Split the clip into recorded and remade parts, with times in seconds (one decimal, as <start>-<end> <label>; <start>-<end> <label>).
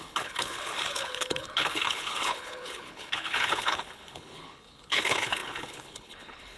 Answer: 0.0-6.6 remade